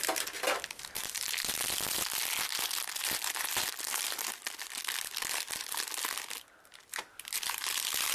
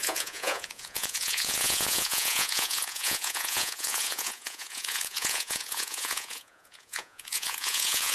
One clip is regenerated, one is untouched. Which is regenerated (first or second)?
second